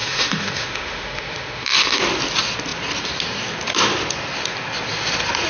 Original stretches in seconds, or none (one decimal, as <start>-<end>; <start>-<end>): 2.0-5.5